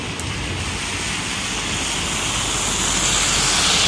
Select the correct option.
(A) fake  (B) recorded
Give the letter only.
B